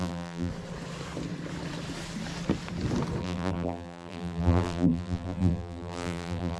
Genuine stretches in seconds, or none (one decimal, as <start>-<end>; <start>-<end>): 0.5-3.2